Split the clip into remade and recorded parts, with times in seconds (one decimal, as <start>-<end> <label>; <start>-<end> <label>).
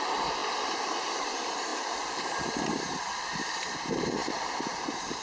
0.0-0.4 remade; 0.4-1.1 recorded; 1.1-4.2 remade; 4.2-4.7 recorded; 4.7-5.2 remade